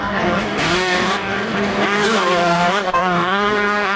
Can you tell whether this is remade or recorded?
remade